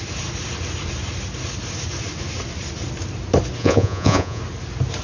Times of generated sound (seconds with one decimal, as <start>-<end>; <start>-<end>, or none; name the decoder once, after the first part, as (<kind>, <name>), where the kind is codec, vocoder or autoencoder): 3.6-4.4 (vocoder, Vocos)